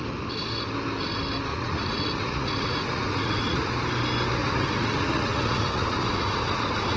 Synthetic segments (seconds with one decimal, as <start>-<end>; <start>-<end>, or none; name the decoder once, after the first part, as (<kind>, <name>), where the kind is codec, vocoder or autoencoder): 1.5-3.7 (vocoder, Vocos); 4.4-7.0